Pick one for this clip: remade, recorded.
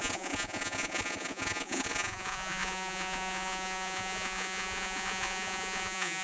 remade